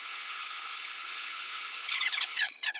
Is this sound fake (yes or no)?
yes